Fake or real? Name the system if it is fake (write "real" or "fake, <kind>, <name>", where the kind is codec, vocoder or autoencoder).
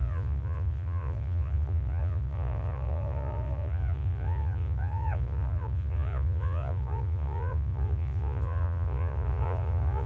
fake, vocoder, Vocos